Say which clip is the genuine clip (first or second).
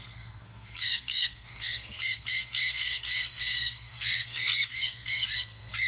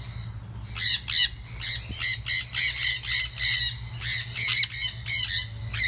second